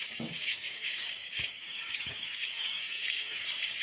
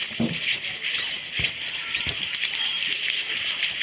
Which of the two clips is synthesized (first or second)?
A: first